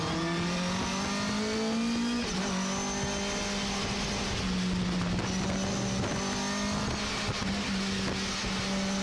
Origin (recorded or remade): recorded